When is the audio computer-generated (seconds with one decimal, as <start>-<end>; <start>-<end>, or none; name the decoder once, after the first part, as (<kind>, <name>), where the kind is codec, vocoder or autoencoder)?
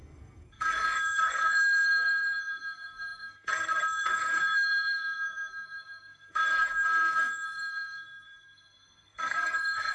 0.0-9.9 (codec, SNAC)